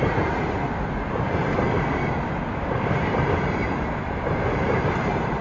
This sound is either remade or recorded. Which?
remade